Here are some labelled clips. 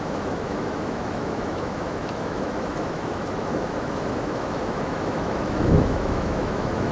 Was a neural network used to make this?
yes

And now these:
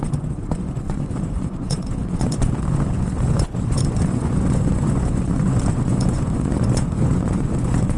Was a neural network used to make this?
yes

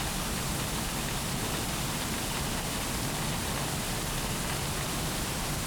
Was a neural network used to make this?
no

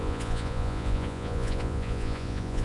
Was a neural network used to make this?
yes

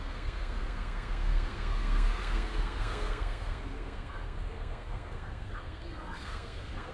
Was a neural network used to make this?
yes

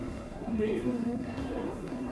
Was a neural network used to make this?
yes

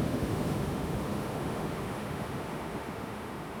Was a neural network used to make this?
yes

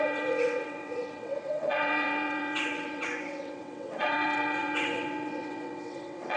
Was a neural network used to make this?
yes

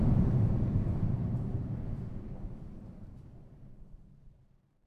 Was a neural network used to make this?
yes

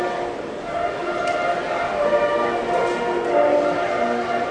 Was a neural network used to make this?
no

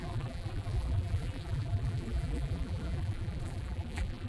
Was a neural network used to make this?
yes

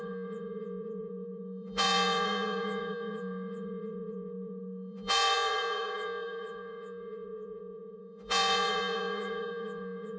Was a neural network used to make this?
yes